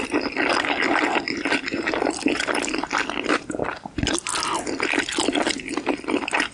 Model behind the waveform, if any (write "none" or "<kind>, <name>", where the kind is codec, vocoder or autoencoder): none